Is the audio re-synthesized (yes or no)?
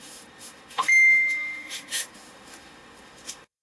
yes